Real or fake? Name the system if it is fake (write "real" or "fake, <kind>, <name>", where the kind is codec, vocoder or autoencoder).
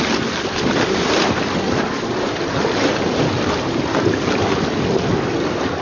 real